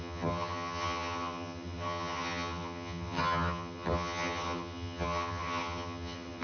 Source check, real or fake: fake